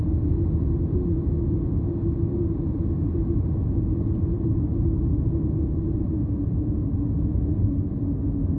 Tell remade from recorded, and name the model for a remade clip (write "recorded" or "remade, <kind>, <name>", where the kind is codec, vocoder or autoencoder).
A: recorded